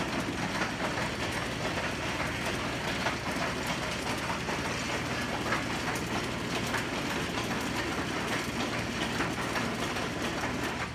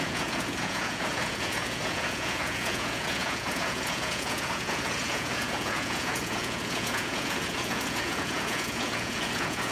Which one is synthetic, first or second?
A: second